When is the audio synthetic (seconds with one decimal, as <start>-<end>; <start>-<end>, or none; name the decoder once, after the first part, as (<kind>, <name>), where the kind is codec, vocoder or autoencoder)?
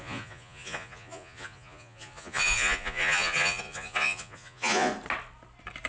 0.0-4.9 (vocoder, Vocos)